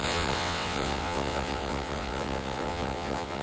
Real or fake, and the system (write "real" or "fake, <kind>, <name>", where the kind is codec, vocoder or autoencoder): fake, vocoder, WaveNeXt